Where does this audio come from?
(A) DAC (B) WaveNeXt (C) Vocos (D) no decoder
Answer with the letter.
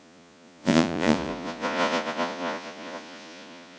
C